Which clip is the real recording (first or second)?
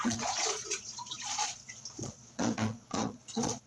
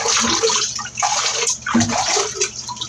second